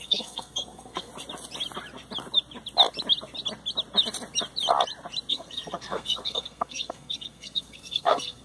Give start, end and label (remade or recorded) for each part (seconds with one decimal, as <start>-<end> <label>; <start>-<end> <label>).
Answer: 0.0-1.1 remade; 1.1-5.3 recorded; 5.3-8.4 remade